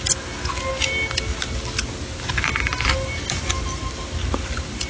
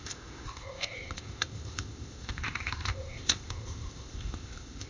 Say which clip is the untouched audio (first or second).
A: first